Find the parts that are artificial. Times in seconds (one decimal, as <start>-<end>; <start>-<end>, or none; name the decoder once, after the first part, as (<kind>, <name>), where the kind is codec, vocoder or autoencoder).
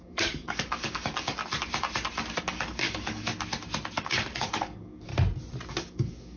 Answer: 0.0-1.4 (codec, DAC); 2.4-3.3; 4.0-5.1; 5.7-6.4